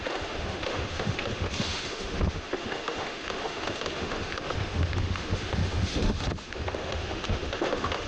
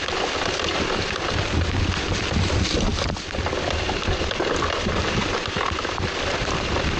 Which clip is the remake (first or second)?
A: first